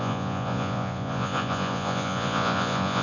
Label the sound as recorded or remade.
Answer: remade